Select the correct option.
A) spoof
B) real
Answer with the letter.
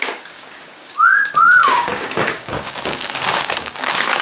A